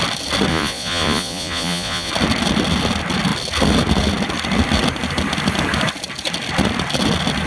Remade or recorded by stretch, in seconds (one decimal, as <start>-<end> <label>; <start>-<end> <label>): 0.0-0.5 recorded; 0.5-2.1 remade; 2.1-7.5 recorded